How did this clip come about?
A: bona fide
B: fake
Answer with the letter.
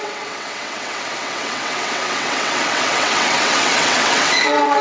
B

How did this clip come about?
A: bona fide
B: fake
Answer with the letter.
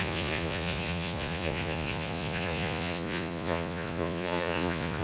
B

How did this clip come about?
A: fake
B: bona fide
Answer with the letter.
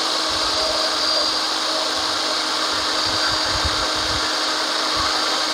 B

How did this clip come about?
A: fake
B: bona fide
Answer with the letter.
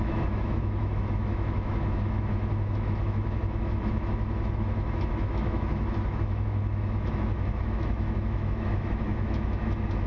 A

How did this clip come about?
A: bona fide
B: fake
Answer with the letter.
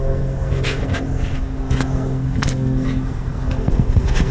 B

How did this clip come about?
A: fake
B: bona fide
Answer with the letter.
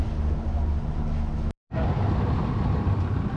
B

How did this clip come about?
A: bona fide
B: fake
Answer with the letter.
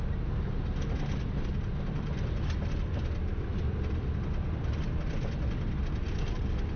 A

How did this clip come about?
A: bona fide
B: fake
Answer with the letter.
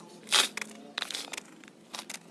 A